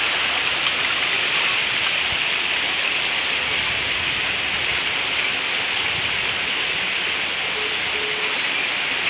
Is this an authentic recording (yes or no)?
yes